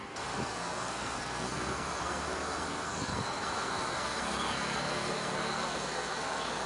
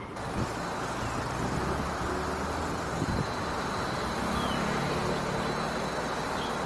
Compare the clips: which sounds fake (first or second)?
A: first